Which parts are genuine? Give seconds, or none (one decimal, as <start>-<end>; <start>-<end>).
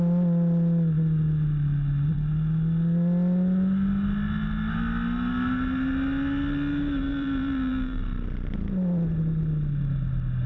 0.0-7.1; 8.0-10.5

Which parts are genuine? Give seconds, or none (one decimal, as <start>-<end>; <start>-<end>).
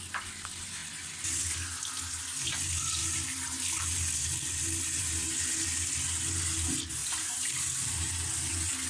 0.0-7.0; 7.9-8.9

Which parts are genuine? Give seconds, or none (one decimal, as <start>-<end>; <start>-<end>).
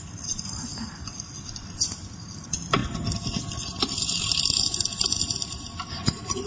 2.8-3.8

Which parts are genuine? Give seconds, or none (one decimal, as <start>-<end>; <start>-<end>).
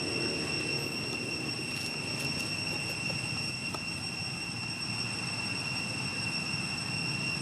0.0-6.1; 6.6-7.4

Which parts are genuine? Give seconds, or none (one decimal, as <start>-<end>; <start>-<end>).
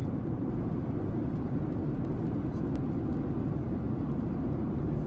1.8-5.1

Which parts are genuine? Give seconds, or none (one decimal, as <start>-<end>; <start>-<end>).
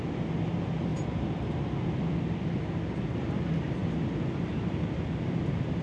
0.0-0.9; 1.5-5.8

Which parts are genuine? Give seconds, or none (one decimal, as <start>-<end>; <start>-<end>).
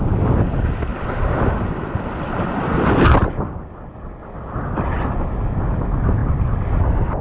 0.0-0.9; 3.3-6.2; 6.8-7.2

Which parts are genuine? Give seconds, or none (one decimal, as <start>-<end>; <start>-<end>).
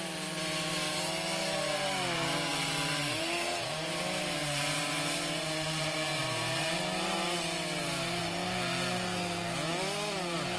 8.2-9.8